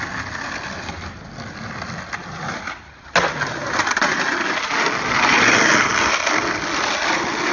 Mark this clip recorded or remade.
recorded